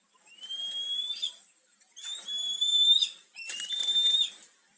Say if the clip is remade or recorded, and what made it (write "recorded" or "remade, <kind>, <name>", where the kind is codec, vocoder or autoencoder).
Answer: recorded